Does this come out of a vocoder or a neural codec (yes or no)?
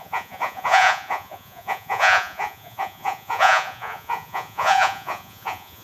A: yes